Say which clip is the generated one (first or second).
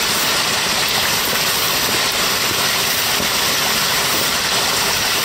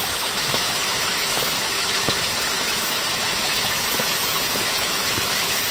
second